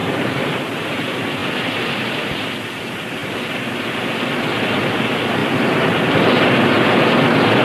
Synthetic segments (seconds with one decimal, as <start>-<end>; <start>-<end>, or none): 0.0-0.6; 5.4-6.1